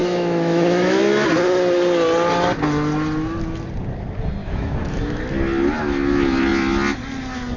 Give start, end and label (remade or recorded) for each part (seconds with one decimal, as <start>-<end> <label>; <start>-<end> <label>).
0.0-1.0 remade; 1.0-4.4 recorded; 4.4-5.2 remade; 5.2-7.6 recorded